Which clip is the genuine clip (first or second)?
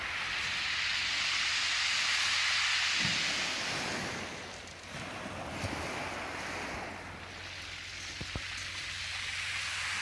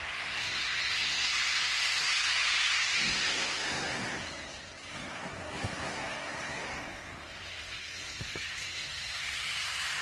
first